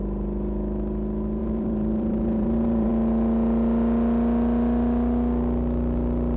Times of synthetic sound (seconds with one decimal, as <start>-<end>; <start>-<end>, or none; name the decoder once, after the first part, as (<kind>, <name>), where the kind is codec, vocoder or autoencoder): 1.4-2.9 (vocoder, BigVGAN v2)